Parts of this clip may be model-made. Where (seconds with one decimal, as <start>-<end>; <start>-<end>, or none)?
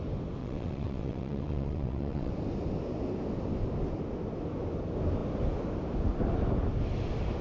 0.4-2.3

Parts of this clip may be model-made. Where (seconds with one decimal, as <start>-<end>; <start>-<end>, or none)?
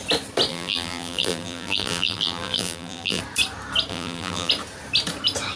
0.5-3.2; 3.9-4.5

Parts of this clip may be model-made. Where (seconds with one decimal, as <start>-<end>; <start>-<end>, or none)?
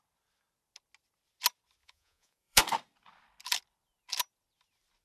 1.8-2.6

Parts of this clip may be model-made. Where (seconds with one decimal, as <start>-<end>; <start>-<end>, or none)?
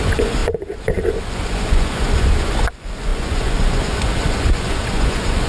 0.0-5.5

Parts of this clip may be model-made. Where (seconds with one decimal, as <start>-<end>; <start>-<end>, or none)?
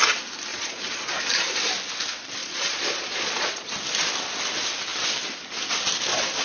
0.5-1.2; 2.4-3.7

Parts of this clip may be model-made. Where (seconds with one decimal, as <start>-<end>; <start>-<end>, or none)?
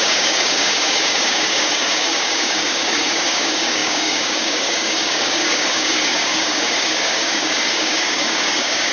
0.0-8.9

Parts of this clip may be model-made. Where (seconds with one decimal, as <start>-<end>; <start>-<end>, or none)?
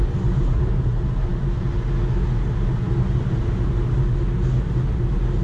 none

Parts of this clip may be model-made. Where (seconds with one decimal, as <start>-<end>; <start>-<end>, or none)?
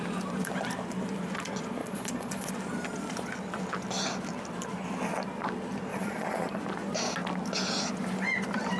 1.8-2.5; 5.9-6.6